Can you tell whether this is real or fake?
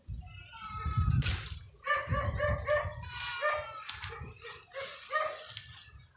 real